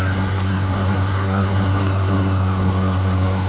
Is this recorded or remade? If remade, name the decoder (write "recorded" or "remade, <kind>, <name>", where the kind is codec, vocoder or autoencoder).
remade, codec, SNAC